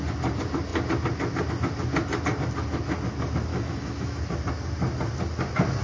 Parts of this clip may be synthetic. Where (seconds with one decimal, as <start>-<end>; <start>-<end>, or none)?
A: 3.5-4.2